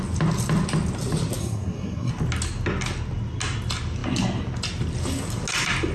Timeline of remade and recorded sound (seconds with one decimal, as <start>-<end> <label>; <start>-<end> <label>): 0.0-1.4 recorded; 1.4-2.1 remade; 2.1-5.9 recorded